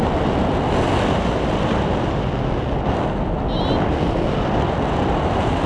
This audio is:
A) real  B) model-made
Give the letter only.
A